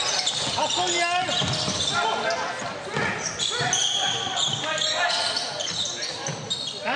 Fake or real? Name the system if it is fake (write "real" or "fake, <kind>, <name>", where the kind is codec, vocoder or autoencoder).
real